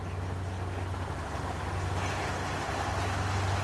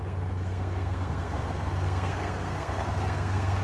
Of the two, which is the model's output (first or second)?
second